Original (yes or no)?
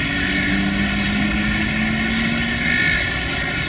yes